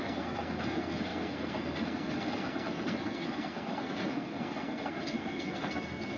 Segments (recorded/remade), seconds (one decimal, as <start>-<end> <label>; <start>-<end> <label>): 0.0-6.2 remade